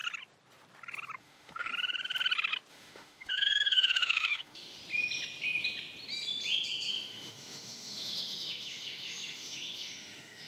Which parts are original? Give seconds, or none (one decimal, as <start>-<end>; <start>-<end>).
0.0-1.2; 1.7-2.7; 4.8-6.9